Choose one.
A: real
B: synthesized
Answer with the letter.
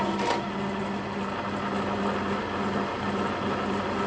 A